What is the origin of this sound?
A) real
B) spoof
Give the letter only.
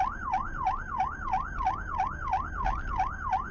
A